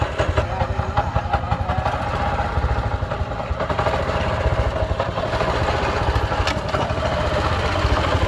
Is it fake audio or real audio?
real